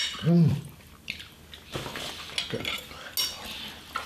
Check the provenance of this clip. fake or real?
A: real